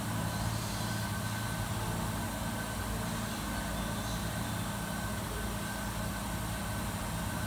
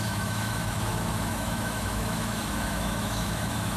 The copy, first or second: second